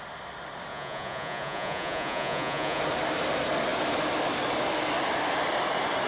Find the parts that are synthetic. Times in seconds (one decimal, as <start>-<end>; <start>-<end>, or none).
0.7-2.8